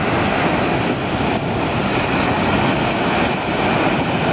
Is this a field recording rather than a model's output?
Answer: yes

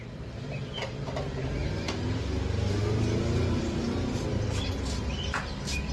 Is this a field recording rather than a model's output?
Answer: yes